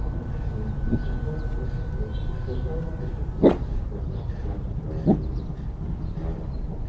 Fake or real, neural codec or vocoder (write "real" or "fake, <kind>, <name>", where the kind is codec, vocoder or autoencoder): real